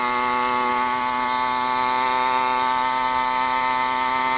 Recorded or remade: recorded